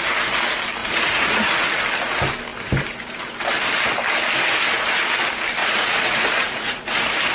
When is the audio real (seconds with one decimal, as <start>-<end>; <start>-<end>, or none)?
0.0-0.8; 1.8-5.6